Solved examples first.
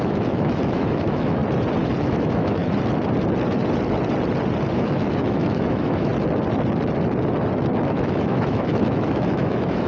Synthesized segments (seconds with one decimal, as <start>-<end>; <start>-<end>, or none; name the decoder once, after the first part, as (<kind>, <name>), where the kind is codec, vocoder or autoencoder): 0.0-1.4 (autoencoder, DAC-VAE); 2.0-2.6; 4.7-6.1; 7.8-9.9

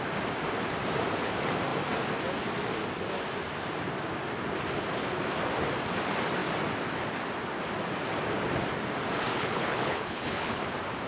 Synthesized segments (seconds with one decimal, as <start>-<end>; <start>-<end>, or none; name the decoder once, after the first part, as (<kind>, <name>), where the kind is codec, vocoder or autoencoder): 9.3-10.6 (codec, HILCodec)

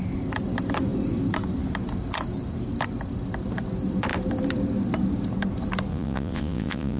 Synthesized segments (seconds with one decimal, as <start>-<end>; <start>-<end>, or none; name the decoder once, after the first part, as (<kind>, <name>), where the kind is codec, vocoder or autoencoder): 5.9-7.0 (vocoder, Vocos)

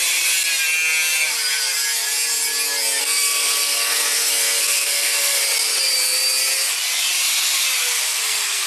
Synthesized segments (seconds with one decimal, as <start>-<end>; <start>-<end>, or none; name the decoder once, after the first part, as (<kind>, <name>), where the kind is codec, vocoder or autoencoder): 3.0-5.4 (codec, SNAC); 7.8-8.7

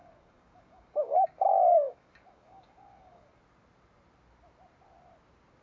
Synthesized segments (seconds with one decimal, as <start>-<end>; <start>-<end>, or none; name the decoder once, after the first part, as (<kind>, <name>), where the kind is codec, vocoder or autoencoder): 0.0-3.4 (codec, DAC)